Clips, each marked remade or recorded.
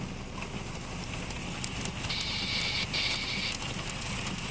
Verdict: recorded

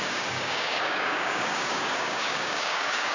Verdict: remade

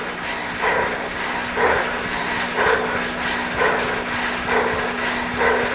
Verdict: recorded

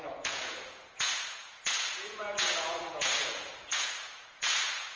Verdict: remade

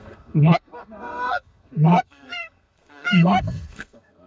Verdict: remade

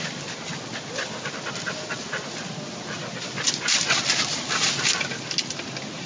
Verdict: recorded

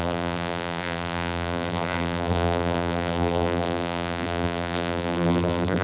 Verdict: remade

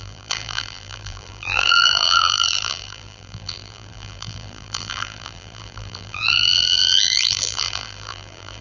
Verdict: remade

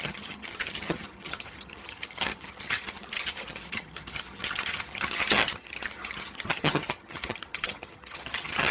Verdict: remade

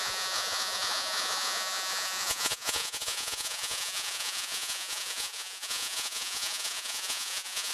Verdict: remade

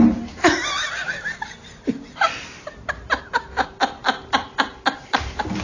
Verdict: recorded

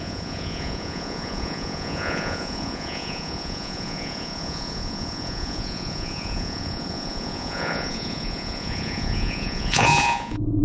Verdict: remade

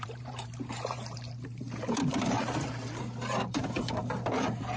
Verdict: remade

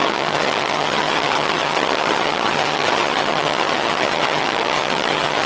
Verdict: remade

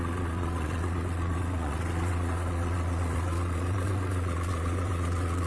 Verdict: remade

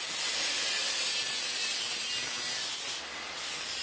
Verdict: recorded